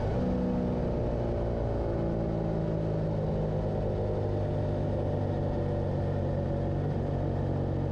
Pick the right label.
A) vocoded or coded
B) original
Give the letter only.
B